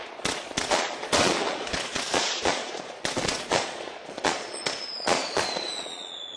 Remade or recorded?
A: remade